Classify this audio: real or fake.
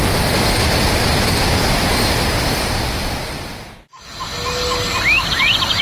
real